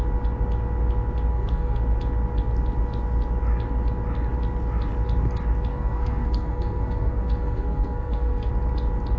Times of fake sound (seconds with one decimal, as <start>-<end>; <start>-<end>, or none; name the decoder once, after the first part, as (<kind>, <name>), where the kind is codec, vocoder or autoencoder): 1.3-1.8 (codec, SNAC); 5.7-8.5